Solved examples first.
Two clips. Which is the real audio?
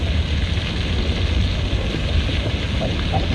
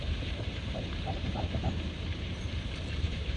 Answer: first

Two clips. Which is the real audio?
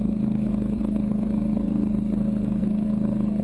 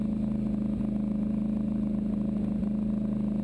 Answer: second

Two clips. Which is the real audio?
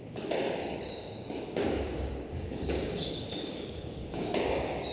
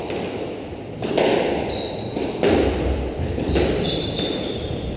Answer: second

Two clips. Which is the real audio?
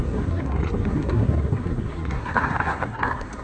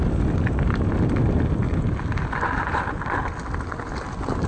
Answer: second